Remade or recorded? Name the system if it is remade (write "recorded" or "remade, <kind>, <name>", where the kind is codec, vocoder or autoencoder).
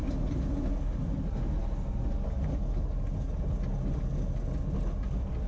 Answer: recorded